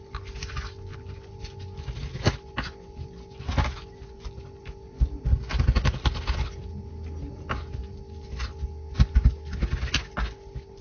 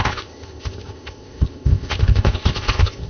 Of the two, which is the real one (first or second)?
first